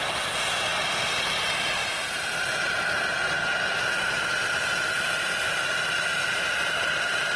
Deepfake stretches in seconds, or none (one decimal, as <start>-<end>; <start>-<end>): 1.8-2.8; 3.4-7.4